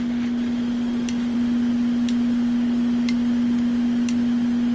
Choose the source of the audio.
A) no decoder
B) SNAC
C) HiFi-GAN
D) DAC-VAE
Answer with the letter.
A